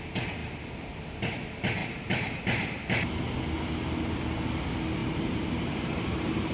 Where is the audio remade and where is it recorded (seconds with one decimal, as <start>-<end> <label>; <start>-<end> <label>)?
0.0-1.8 recorded; 1.8-2.4 remade; 2.4-5.0 recorded; 5.0-6.5 remade